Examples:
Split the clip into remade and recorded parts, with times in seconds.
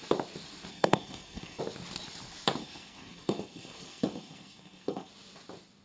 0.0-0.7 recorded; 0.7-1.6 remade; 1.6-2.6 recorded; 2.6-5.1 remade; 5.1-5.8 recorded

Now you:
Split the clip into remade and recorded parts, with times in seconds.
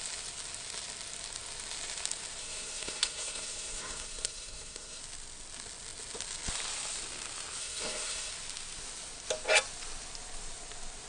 0.0-2.4 recorded; 2.4-5.0 remade; 5.0-7.6 recorded; 7.6-8.3 remade; 8.3-11.1 recorded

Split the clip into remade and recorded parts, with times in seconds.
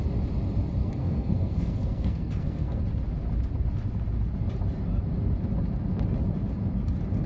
0.0-0.8 recorded; 0.8-2.8 remade; 2.8-7.3 recorded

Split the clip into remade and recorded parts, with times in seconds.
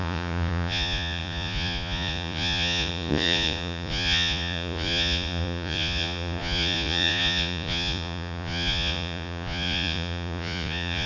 0.0-11.1 remade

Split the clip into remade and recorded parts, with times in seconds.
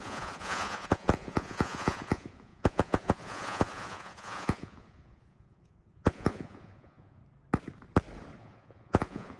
0.0-7.2 remade; 7.2-8.4 recorded; 8.4-9.4 remade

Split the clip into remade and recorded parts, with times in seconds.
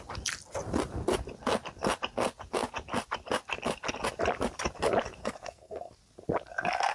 0.0-5.2 recorded; 5.2-5.9 remade; 5.9-6.9 recorded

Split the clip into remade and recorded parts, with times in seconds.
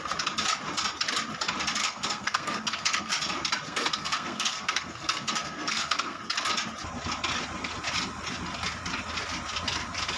0.0-1.8 recorded; 1.8-3.1 remade; 3.1-3.7 recorded; 3.7-6.2 remade; 6.2-10.2 recorded